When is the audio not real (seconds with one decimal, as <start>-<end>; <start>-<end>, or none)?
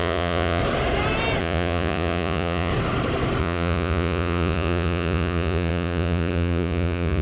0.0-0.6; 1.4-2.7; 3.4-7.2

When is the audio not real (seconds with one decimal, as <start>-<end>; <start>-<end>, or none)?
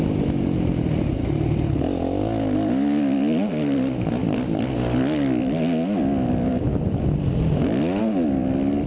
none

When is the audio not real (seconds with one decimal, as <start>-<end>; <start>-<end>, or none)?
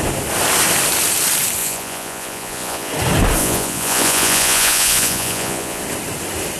1.6-2.9; 3.4-5.8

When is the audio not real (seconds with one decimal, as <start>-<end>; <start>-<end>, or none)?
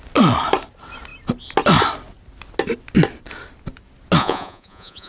4.2-5.1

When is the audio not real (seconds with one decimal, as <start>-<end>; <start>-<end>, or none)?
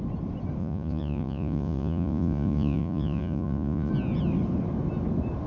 0.6-3.9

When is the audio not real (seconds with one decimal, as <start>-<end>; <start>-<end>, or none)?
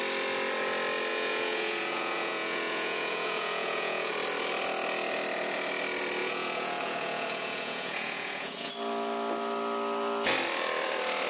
1.1-4.1; 6.2-8.7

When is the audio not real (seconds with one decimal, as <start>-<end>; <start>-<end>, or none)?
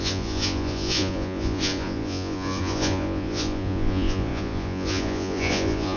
0.0-6.0